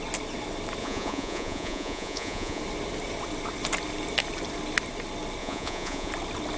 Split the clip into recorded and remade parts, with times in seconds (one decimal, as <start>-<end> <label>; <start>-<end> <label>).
0.0-0.8 recorded; 0.8-2.6 remade; 2.6-5.4 recorded; 5.4-6.1 remade; 6.1-6.6 recorded